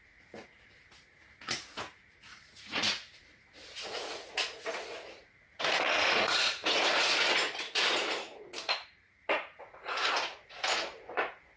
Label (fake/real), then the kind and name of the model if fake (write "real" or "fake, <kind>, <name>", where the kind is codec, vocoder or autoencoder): fake, vocoder, Vocos